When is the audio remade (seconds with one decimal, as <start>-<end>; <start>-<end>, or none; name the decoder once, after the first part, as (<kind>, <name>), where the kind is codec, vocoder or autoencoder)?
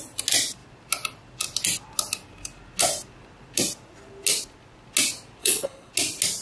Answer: 5.4-5.9 (codec, HILCodec)